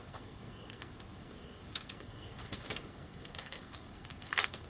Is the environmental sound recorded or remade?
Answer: remade